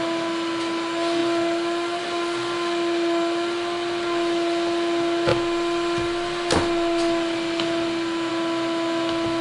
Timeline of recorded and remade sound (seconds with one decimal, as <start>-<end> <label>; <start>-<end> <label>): 0.0-9.4 recorded